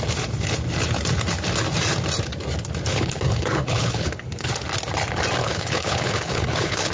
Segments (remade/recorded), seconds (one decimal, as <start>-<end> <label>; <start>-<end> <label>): 0.0-2.9 recorded; 2.9-4.5 remade; 4.5-5.4 recorded; 5.4-6.9 remade